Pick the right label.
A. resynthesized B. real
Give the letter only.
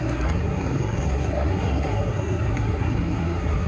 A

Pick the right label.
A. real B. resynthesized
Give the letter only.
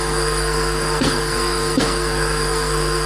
B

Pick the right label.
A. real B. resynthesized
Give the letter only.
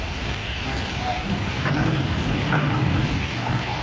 B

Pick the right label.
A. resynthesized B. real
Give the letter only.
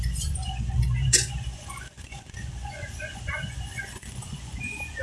A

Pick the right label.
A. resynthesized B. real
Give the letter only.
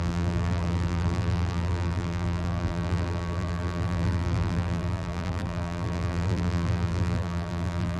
A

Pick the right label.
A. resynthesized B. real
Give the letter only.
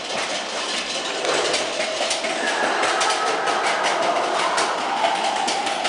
B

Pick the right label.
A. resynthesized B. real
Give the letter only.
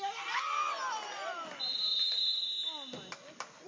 B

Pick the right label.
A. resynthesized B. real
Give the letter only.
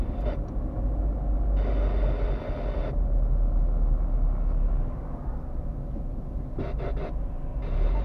B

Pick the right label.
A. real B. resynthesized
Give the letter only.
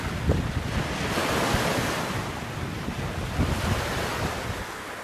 A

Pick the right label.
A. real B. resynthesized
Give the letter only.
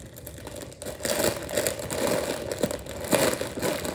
A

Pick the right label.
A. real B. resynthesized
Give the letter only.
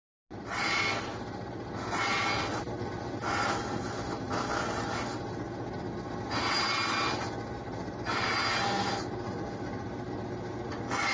A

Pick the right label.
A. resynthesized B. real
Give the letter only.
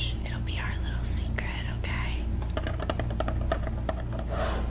B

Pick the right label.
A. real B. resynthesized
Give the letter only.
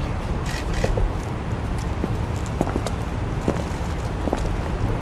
A